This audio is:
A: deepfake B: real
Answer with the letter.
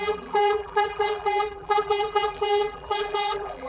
A